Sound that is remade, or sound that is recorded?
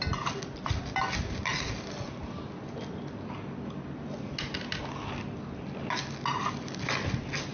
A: recorded